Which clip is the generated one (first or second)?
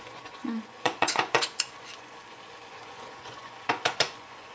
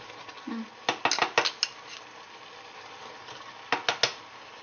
first